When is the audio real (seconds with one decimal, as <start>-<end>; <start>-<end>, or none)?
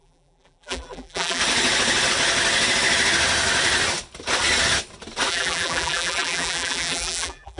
1.4-5.3